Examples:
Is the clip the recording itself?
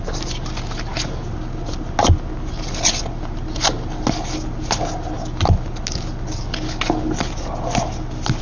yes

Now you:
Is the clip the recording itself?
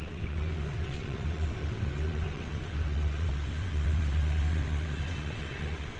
no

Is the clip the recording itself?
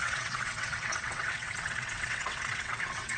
no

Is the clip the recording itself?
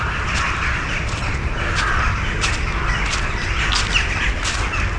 yes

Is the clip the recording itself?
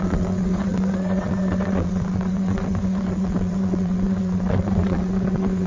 no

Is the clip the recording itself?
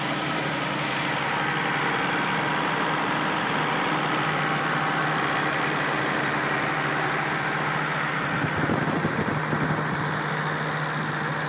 yes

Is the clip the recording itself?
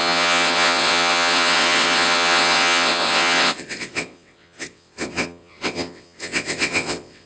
no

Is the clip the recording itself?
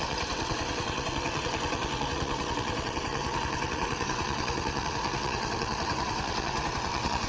no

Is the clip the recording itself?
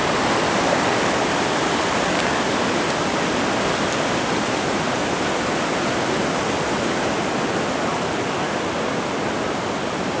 yes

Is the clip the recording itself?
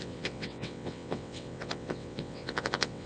no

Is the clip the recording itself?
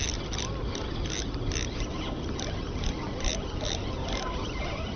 yes